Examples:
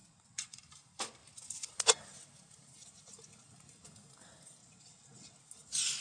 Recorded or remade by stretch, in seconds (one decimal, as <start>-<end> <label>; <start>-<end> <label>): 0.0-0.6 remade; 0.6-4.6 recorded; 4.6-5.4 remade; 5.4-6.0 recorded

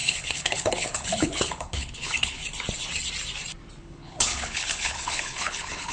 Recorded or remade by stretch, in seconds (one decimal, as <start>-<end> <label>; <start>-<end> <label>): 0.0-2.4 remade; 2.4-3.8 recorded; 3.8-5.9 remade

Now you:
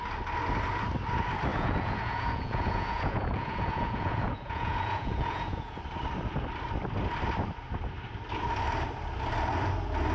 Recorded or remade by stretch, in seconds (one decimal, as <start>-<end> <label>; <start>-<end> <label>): 0.0-1.5 recorded; 1.5-5.8 remade; 5.8-10.1 recorded

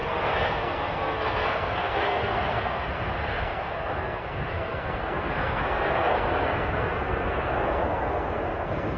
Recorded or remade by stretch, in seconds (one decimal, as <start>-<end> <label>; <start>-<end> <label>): 0.0-9.0 remade

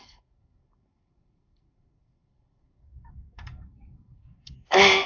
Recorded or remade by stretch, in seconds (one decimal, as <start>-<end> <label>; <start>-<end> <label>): 0.0-5.1 remade

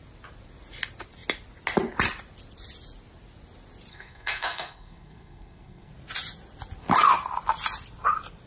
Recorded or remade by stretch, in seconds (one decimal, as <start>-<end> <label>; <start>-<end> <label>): 0.0-3.9 recorded; 3.9-5.9 remade; 5.9-8.5 recorded

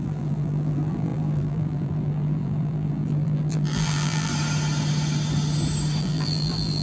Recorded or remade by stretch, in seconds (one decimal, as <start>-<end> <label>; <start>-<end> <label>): 0.0-4.3 remade; 4.3-6.0 recorded; 6.0-6.8 remade

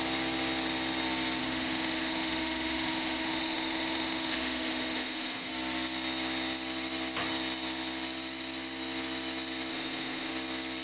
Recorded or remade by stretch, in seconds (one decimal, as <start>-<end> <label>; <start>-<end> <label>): 0.0-1.4 recorded; 1.4-5.5 remade; 5.5-9.7 recorded; 9.7-10.3 remade; 10.3-10.8 recorded